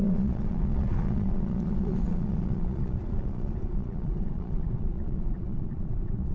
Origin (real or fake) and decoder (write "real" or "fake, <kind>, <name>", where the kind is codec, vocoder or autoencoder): fake, vocoder, Vocos